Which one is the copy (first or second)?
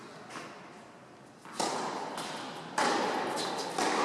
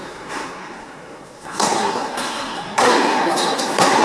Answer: second